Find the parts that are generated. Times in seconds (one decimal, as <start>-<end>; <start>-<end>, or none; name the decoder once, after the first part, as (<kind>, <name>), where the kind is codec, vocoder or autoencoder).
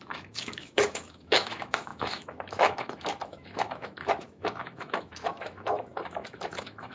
0.0-6.9 (autoencoder, DAC-VAE)